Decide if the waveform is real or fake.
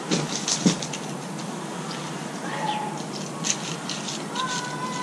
real